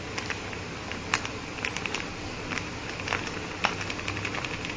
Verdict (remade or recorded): recorded